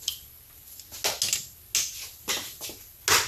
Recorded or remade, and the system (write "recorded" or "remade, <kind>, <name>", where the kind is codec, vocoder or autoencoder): recorded